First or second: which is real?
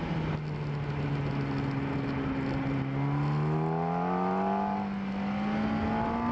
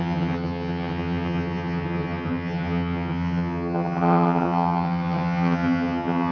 first